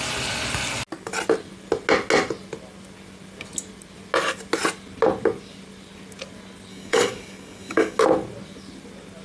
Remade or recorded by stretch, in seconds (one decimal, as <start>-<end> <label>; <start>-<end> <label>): 0.0-6.7 recorded; 6.7-8.0 remade; 8.0-9.2 recorded